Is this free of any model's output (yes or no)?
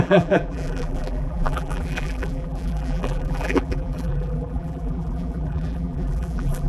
no